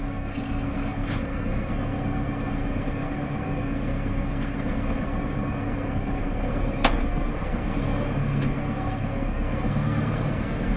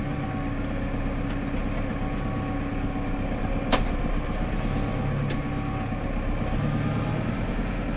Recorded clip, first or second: second